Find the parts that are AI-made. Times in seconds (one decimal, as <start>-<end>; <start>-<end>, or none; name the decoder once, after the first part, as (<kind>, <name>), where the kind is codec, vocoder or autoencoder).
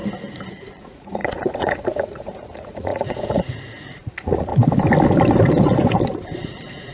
0.5-4.5 (vocoder, Vocos); 6.5-6.9